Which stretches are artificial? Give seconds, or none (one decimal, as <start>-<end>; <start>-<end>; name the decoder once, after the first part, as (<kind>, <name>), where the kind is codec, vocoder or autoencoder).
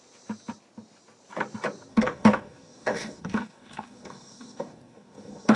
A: 1.9-5.6 (codec, DAC)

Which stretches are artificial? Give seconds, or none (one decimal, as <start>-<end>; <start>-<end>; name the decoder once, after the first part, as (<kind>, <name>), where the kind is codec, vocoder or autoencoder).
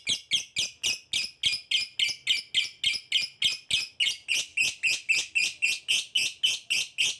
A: none